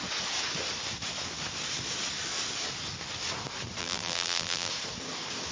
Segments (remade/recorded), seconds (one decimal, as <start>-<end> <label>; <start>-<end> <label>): 0.0-3.8 recorded; 3.8-4.7 remade; 4.7-5.5 recorded